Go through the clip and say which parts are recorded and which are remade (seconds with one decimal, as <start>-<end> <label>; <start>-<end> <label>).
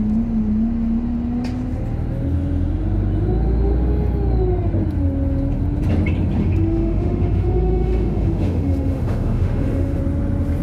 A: 0.0-6.4 recorded; 6.4-10.0 remade; 10.0-10.6 recorded